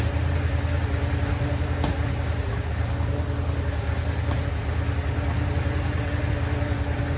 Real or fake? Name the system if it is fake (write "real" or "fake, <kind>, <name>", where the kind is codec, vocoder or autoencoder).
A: real